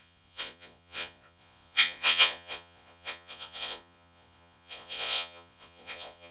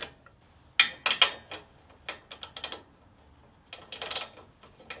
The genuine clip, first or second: second